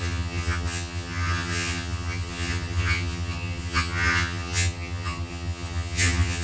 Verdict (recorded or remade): remade